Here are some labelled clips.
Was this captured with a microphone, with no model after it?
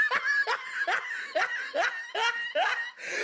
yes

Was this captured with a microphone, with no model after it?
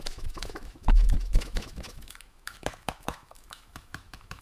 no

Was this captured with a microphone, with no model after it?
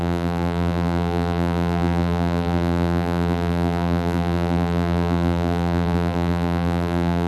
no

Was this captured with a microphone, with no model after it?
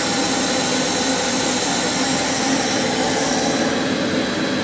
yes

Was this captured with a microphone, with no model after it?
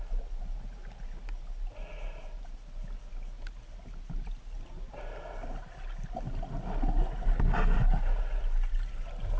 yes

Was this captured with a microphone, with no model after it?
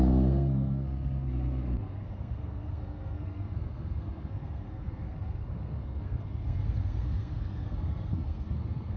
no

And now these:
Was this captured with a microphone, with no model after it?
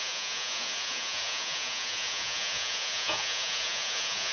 no